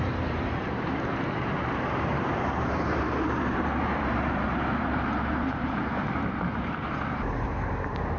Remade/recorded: remade